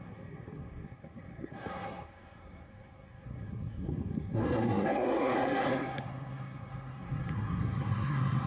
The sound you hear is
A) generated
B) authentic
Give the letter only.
A